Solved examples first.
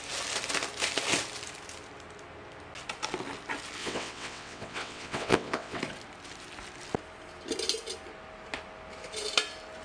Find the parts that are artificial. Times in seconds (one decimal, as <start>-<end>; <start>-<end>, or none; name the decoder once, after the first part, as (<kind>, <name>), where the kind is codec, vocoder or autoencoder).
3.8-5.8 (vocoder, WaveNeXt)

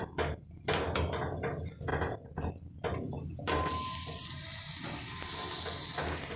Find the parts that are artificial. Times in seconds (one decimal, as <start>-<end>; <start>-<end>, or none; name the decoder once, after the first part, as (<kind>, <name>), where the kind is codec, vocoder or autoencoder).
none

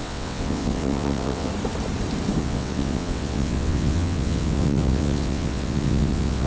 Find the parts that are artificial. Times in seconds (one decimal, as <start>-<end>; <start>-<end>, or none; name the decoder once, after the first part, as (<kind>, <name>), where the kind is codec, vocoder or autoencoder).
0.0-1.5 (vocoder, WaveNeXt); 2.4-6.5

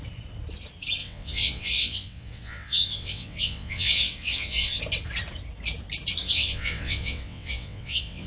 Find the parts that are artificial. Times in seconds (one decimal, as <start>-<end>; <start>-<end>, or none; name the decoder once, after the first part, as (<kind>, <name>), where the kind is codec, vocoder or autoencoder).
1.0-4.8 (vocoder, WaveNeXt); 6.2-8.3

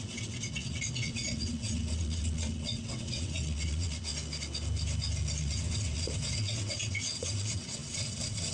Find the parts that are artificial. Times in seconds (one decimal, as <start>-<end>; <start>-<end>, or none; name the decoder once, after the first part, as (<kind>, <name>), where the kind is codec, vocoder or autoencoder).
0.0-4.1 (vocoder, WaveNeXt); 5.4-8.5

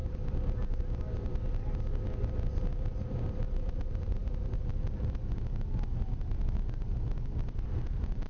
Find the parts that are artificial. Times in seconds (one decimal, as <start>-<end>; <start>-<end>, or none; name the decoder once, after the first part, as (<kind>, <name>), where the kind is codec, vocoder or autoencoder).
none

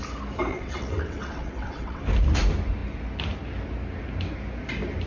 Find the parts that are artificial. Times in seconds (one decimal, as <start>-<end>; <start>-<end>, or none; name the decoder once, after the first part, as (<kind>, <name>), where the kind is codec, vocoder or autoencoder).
0.5-2.0 (vocoder, WaveNeXt)

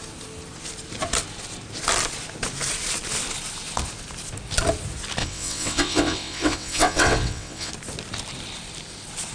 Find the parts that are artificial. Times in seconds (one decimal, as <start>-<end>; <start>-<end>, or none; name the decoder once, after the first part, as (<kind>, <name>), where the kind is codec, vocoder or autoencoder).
5.2-7.7 (vocoder, WaveNeXt)